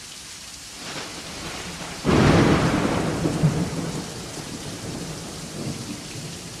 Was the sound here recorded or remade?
remade